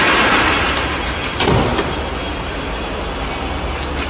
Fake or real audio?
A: real